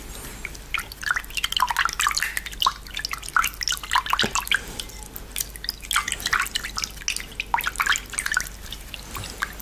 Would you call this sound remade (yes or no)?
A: no